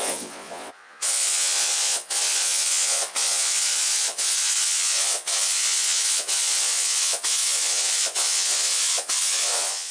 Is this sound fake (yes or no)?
yes